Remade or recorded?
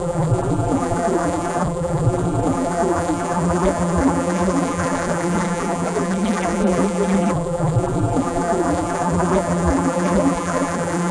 remade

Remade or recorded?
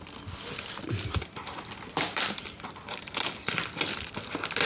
recorded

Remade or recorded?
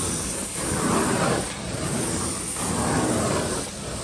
recorded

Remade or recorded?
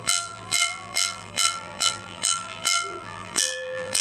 remade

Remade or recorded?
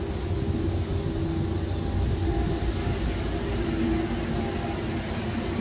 recorded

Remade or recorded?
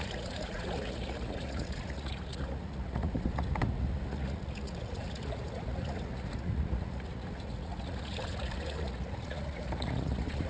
remade